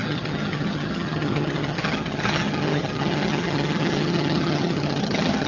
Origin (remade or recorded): remade